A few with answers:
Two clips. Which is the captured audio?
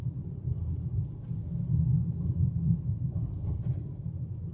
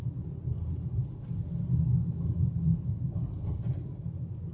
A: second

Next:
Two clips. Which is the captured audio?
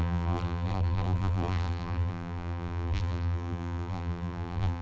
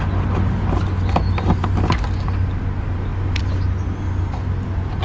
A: second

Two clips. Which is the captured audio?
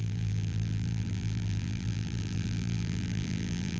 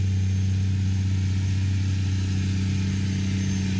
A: second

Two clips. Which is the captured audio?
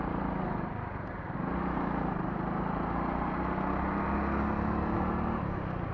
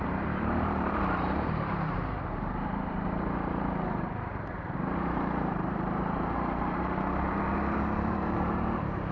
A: first